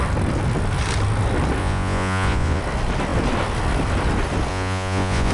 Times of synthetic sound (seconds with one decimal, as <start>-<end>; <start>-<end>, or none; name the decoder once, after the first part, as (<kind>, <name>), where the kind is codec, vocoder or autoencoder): 1.6-2.6 (vocoder, Vocos); 4.5-5.3